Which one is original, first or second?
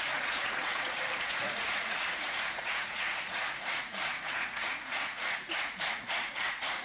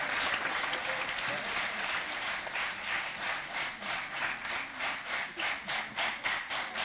second